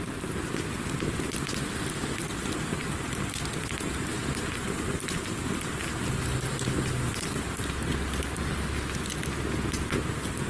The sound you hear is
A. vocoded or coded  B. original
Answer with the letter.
B